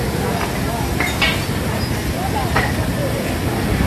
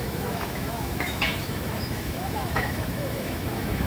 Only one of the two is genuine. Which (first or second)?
first